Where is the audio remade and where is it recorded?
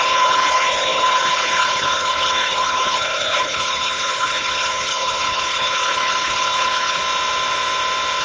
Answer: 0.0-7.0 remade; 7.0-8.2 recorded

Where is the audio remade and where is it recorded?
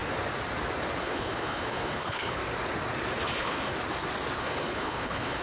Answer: 0.0-1.0 recorded; 1.0-2.4 remade; 2.4-3.2 recorded; 3.2-3.7 remade; 3.7-4.4 recorded; 4.4-5.4 remade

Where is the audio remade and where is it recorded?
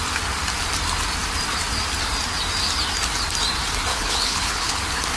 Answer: 0.0-3.9 recorded; 3.9-4.8 remade; 4.8-5.2 recorded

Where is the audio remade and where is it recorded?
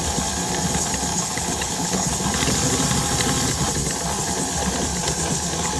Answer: 0.0-1.1 recorded; 1.1-2.1 remade; 2.1-5.8 recorded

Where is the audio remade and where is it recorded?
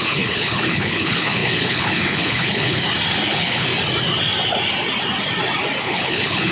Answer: 0.0-2.8 remade; 2.8-3.3 recorded; 3.3-3.7 remade; 3.7-5.8 recorded; 5.8-6.5 remade